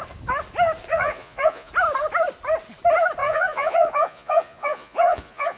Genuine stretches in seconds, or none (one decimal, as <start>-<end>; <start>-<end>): 0.0-0.9; 1.7-3.2

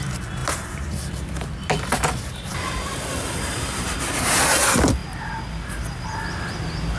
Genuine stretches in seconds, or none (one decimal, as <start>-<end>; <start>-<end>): 0.0-0.4; 4.2-7.0

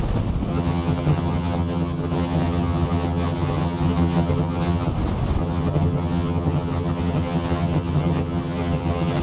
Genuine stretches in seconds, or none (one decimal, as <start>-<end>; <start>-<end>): 0.0-0.5; 4.9-5.4